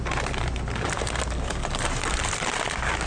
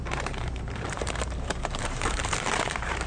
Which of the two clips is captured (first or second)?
first